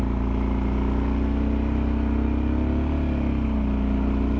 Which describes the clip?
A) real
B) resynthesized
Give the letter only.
A